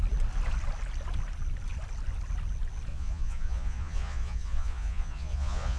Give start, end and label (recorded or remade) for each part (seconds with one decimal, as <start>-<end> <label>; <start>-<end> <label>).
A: 0.0-2.9 recorded; 2.9-5.8 remade

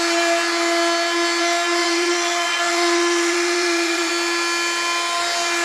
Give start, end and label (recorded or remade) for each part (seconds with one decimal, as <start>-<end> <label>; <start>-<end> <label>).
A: 0.0-1.8 recorded; 1.8-4.1 remade; 4.1-5.6 recorded

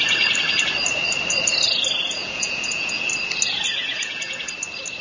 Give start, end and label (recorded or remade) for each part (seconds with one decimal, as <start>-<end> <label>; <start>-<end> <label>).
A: 0.0-2.2 recorded; 2.2-3.1 remade; 3.1-3.8 recorded; 3.8-4.5 remade; 4.5-5.0 recorded

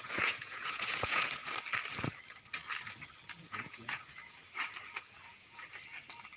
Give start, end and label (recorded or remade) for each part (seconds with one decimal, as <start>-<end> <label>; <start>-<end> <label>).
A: 0.0-1.4 remade; 1.4-3.4 recorded; 3.4-4.4 remade; 4.4-5.0 recorded; 5.0-5.6 remade; 5.6-6.4 recorded

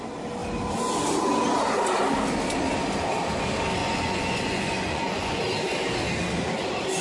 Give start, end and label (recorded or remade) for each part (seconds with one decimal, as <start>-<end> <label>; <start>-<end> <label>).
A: 0.0-3.8 recorded; 3.8-5.4 remade; 5.4-7.0 recorded